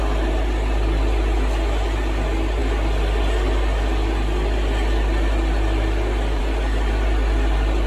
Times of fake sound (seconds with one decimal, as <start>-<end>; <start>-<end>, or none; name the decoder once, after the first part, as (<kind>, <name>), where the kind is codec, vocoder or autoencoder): none